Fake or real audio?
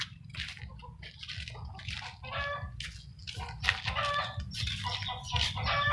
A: real